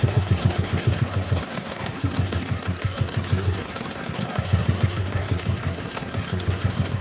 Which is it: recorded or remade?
remade